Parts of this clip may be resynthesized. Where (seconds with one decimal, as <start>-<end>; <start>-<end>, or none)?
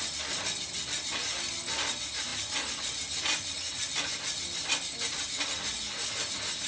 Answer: none